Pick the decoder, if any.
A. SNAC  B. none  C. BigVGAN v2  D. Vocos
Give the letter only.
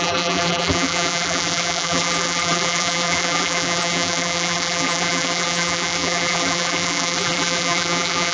C